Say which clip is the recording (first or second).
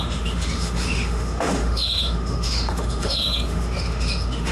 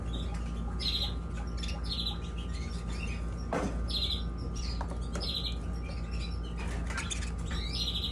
second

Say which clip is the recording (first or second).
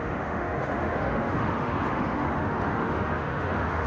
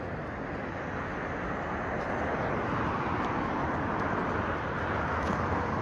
second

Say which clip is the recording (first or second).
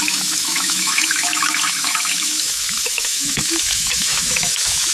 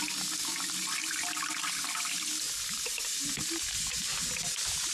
second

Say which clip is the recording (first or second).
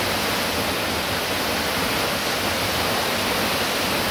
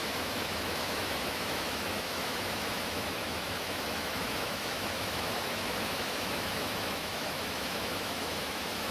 first